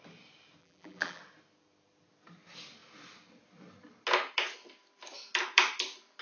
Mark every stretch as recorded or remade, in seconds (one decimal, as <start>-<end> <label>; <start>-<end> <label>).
0.0-0.6 recorded; 0.6-1.2 remade; 1.2-6.2 recorded